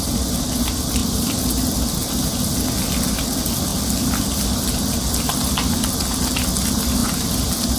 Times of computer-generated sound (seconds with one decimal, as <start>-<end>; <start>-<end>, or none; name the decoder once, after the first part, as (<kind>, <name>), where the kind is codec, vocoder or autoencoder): 1.0-1.5 (vocoder, BigVGAN v2)